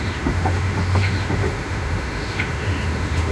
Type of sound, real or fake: fake